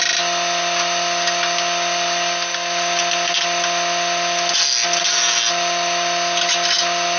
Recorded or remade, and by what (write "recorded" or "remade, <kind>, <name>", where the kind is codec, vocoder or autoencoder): recorded